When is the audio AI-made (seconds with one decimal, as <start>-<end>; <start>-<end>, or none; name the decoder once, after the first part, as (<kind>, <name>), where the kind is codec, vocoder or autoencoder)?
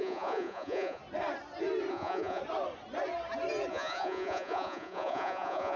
0.0-1.0 (vocoder, Vocos); 1.9-2.4; 3.7-5.8